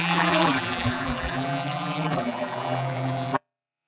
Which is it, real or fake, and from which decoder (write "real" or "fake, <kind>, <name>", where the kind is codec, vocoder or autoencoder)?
fake, vocoder, BigVGAN v2